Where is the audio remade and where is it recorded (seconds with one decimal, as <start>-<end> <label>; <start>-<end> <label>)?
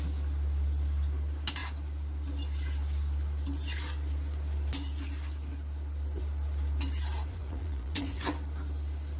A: 0.0-7.3 recorded; 7.3-8.3 remade; 8.3-9.2 recorded